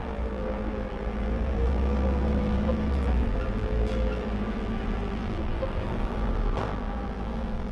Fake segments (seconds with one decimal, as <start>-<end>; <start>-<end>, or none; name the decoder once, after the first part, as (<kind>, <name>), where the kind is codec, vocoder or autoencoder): 0.0-7.7 (vocoder, BigVGAN v2)